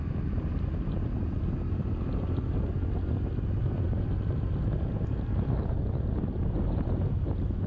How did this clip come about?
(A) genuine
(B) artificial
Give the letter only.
A